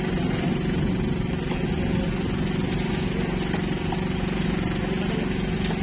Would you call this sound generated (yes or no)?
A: no